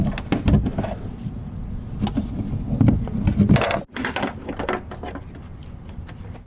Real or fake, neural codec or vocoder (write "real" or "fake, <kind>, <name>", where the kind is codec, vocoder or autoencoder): real